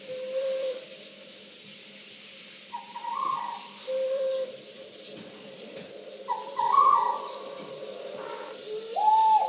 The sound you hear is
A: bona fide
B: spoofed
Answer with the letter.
B